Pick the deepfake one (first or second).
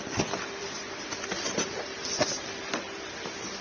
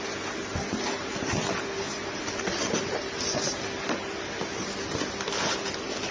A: first